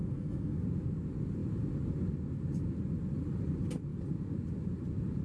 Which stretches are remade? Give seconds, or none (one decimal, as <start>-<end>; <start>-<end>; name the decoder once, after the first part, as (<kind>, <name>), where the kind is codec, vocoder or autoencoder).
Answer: 0.0-0.6 (codec, SNAC)